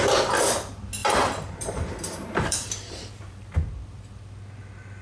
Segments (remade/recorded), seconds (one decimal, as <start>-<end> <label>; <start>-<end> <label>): 0.0-1.0 recorded; 1.0-3.5 remade; 3.5-5.0 recorded